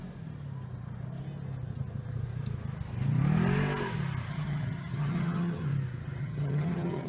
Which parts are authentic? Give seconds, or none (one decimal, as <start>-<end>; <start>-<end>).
0.0-4.3; 5.7-6.2